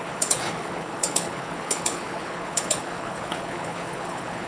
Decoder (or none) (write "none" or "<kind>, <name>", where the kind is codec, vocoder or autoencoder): codec, HILCodec